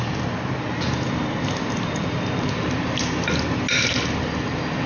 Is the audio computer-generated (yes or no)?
no